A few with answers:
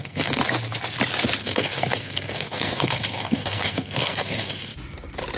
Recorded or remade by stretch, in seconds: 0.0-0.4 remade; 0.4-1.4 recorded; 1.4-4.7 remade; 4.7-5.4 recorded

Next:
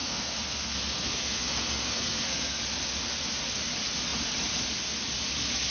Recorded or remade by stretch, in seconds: 0.0-2.6 remade; 2.6-5.7 recorded

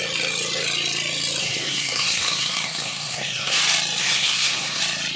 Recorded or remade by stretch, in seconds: 0.0-1.4 recorded; 1.4-3.6 remade; 3.6-4.0 recorded; 4.0-4.8 remade; 4.8-5.2 recorded